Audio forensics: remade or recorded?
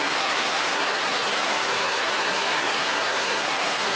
remade